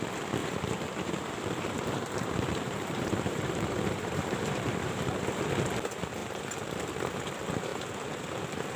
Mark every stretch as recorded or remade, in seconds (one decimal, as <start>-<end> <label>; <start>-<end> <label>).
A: 0.0-0.4 recorded; 0.4-5.4 remade; 5.4-6.2 recorded; 6.2-7.1 remade; 7.1-8.8 recorded